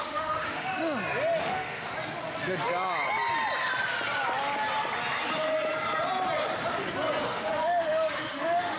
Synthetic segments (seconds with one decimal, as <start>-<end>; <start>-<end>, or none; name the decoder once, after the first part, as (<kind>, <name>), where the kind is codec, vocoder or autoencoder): 0.0-0.7 (autoencoder, DAC-VAE); 1.4-1.9; 7.2-8.8